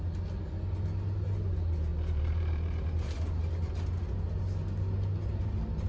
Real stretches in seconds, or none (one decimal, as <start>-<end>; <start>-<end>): 0.0-1.9; 2.8-5.9